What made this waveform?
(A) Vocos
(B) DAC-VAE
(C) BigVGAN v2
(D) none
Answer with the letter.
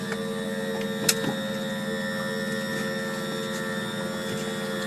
D